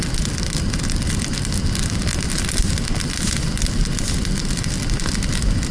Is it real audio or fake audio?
real